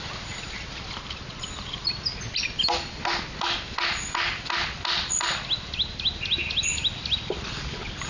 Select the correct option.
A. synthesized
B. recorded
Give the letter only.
B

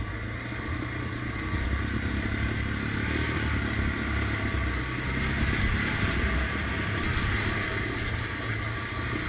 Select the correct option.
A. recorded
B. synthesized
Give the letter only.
A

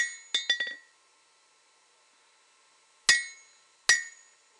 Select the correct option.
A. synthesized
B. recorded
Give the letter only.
B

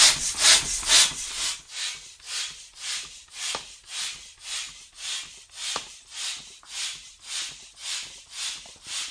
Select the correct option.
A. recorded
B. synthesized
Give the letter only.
A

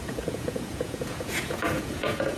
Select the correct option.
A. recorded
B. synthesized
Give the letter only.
B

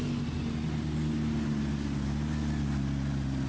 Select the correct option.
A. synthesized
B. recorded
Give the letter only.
B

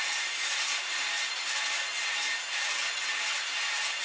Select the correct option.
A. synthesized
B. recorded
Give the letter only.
B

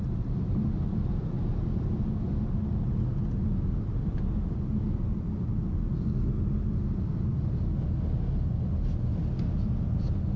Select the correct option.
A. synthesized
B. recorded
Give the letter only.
B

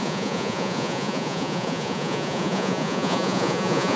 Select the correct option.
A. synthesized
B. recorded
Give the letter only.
A